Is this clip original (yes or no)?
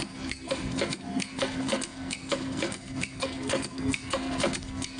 no